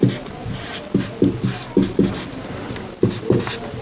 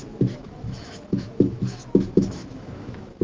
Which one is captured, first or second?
first